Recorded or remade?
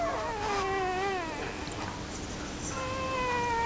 recorded